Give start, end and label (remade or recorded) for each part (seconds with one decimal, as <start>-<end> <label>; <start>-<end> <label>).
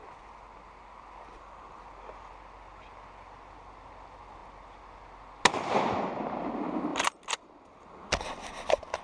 0.0-9.0 recorded